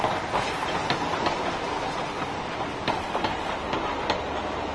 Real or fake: real